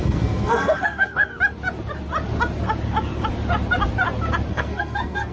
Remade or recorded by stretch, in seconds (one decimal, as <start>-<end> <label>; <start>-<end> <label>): 0.0-1.3 remade; 1.3-4.5 recorded; 4.5-5.3 remade